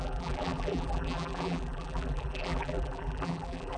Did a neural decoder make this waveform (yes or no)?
yes